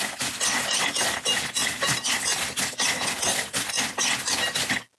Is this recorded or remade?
recorded